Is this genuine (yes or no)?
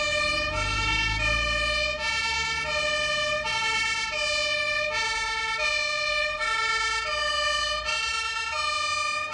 yes